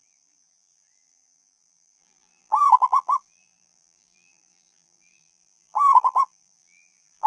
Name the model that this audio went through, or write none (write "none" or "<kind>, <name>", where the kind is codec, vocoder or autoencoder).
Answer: vocoder, BigVGAN v2